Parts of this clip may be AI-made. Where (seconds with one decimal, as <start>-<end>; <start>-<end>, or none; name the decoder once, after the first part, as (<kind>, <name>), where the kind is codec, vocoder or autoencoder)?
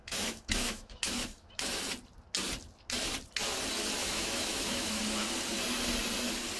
0.0-1.5 (autoencoder, DAC-VAE); 4.0-5.0